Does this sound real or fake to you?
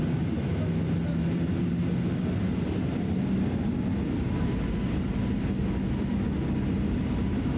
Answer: real